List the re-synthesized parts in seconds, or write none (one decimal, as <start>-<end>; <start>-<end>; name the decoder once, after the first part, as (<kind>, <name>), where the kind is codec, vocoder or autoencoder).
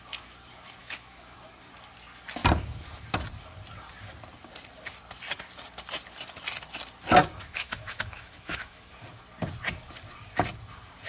0.8-1.5 (autoencoder, DAC-VAE); 7.2-8.9